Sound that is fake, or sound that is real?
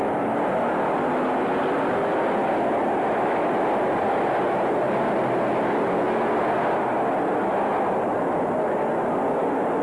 real